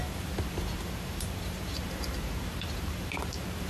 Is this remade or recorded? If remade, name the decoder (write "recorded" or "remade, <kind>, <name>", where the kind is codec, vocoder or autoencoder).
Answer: remade, vocoder, BigVGAN v2